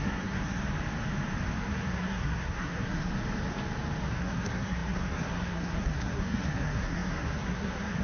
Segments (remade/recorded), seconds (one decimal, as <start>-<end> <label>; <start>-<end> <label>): 0.0-0.6 remade; 0.6-1.6 recorded; 1.6-3.1 remade; 3.1-4.1 recorded; 4.1-8.0 remade